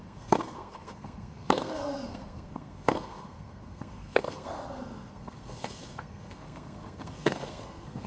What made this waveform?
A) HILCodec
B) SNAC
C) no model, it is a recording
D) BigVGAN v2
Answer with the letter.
B